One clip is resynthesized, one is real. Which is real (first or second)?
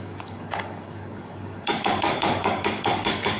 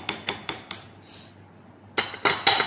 second